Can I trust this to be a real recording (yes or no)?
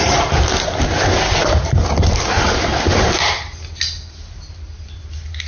yes